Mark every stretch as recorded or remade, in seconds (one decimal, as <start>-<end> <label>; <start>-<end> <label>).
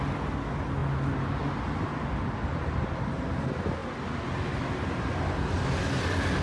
0.0-6.4 recorded